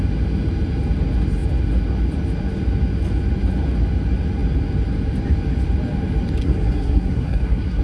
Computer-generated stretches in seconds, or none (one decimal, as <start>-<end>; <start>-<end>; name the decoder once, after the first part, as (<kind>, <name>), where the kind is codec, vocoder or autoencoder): 6.4-7.8 (codec, SNAC)